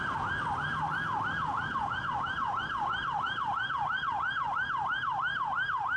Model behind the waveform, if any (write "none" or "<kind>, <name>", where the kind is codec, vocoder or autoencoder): none